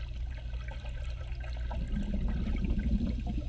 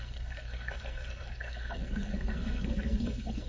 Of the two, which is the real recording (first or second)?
first